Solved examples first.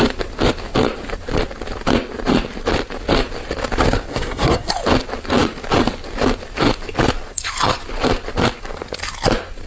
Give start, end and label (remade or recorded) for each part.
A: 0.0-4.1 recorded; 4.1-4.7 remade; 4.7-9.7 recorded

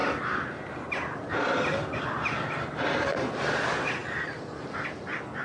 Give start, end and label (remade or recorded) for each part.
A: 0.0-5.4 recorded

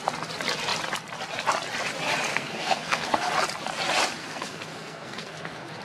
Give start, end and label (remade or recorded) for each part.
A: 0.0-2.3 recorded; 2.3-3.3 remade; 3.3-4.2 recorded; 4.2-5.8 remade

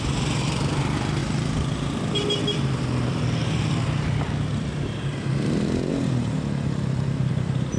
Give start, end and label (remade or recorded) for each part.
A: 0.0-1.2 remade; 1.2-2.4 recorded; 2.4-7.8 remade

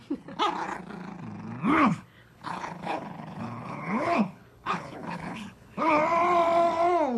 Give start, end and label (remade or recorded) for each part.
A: 0.0-1.7 recorded; 1.7-6.0 remade; 6.0-7.2 recorded